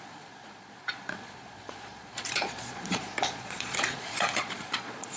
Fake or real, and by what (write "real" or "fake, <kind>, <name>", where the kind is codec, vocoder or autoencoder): fake, vocoder, Vocos